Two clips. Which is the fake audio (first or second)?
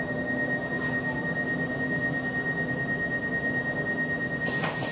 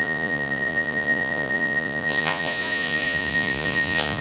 second